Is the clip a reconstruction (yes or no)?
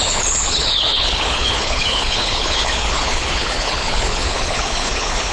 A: yes